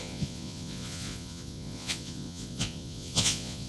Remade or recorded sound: remade